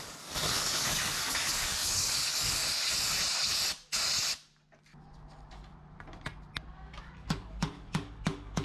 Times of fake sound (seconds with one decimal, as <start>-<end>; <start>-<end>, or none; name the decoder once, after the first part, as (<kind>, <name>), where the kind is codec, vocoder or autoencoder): 0.0-2.6 (codec, DAC); 7.0-8.6

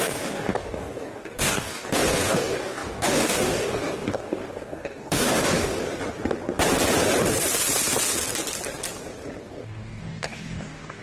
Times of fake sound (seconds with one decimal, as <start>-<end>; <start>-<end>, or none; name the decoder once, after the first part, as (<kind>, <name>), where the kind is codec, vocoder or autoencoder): 0.0-5.8 (codec, DAC); 9.4-11.0

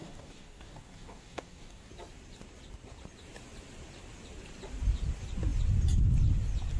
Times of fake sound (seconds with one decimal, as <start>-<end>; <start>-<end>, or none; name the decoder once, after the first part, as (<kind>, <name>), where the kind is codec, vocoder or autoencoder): 0.0-1.9 (codec, DAC)